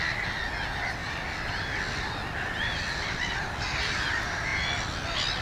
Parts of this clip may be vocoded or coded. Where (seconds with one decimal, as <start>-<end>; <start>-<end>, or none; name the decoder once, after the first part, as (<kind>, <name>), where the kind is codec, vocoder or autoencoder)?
1.0-4.1 (vocoder, BigVGAN v2)